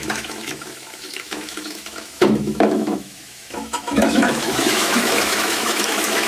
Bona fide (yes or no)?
no